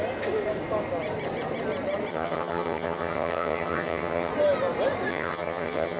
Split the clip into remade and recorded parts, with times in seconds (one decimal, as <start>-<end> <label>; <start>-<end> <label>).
0.0-2.1 recorded; 2.1-4.3 remade; 4.3-5.1 recorded; 5.1-6.0 remade